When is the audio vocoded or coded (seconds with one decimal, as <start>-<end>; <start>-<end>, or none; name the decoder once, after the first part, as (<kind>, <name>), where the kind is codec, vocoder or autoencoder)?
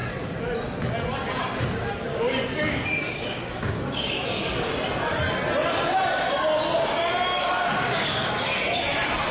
2.0-4.7 (codec, DAC); 7.3-8.3